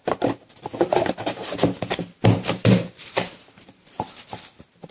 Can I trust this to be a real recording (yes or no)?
no